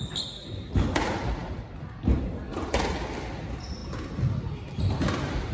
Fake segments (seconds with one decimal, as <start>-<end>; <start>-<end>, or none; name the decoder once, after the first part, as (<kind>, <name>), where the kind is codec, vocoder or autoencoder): none